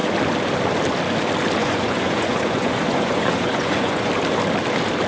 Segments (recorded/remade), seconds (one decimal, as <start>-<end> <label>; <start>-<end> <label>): 0.0-1.6 recorded; 1.6-4.1 remade; 4.1-5.1 recorded